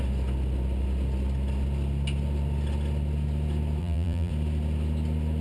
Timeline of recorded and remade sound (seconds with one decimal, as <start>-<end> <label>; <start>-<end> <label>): 0.0-3.8 recorded; 3.8-4.3 remade; 4.3-5.4 recorded